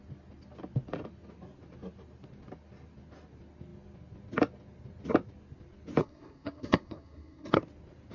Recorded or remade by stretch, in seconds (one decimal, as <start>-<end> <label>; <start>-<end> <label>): 0.0-6.0 recorded; 6.0-7.6 remade; 7.6-8.1 recorded